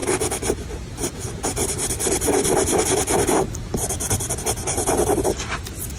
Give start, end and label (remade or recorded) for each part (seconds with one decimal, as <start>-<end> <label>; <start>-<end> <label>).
0.0-6.0 recorded